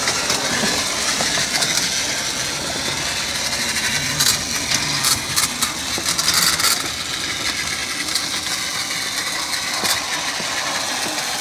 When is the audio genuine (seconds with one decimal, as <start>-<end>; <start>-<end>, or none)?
0.0-11.4